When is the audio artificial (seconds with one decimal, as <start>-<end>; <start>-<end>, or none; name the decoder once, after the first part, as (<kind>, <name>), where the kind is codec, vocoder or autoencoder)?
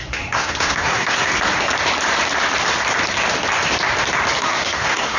0.0-1.3 (codec, SNAC); 4.4-5.2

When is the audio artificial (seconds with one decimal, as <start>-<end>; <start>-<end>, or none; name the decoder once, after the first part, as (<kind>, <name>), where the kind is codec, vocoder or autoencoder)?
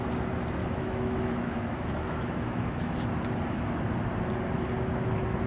0.6-3.1 (autoencoder, DAC-VAE)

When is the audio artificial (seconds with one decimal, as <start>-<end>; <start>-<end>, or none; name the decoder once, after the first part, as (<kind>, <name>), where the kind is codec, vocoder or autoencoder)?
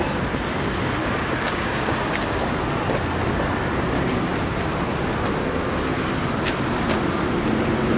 1.0-2.5 (codec, DAC)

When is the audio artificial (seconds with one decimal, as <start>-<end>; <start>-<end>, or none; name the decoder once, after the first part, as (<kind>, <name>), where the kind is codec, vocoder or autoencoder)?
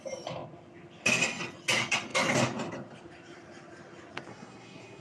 4.3-5.0 (codec, SNAC)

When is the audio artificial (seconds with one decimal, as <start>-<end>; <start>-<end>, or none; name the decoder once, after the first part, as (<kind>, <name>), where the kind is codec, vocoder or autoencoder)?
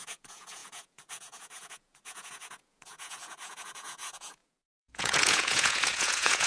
0.0-6.5 (vocoder, Vocos)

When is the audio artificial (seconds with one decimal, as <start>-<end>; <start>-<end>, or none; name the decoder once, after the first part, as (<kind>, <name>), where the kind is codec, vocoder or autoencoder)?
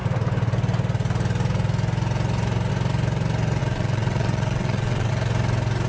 3.6-5.1 (vocoder, WaveNeXt)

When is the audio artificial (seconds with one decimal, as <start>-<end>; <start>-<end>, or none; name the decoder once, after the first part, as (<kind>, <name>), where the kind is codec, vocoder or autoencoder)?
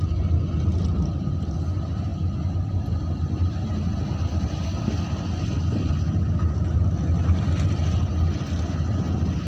none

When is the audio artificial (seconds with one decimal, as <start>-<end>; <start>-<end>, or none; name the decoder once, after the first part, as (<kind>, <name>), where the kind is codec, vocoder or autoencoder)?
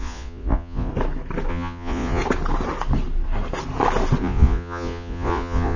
0.0-0.9 (vocoder, Vocos); 1.5-2.2; 4.2-5.8